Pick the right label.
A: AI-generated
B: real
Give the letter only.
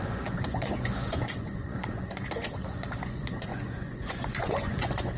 A